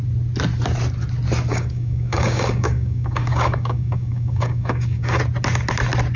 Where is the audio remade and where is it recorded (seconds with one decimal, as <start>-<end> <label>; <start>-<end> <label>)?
0.0-1.5 recorded; 1.5-5.2 remade; 5.2-6.2 recorded